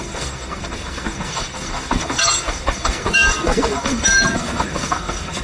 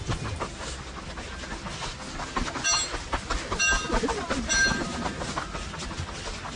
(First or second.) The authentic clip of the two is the second